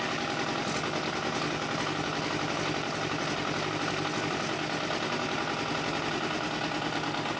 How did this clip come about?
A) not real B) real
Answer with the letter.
B